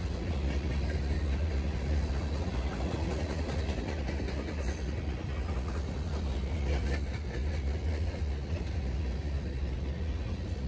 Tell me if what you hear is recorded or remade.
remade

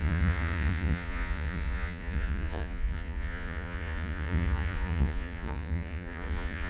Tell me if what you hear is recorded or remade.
remade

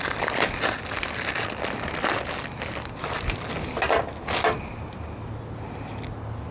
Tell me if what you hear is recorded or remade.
recorded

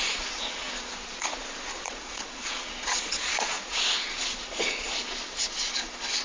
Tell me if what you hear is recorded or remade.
remade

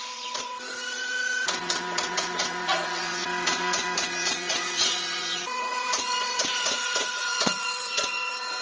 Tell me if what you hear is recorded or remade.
remade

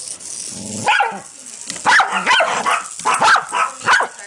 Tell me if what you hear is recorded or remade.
recorded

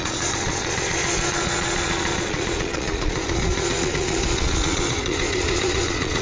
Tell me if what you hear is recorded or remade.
remade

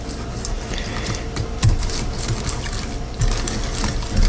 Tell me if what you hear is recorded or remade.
recorded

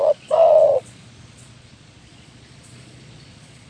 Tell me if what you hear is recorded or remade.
remade